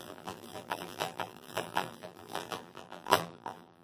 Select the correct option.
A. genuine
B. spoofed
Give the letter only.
B